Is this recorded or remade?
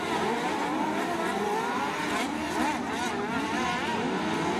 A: remade